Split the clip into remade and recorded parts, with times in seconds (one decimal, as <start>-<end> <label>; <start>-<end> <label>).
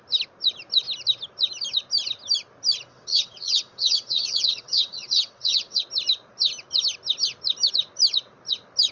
0.0-2.9 recorded; 2.9-5.8 remade; 5.8-8.9 recorded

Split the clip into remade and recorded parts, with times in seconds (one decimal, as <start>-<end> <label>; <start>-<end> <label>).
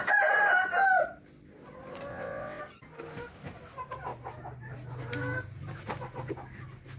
0.0-2.1 recorded; 2.1-2.6 remade; 2.6-7.0 recorded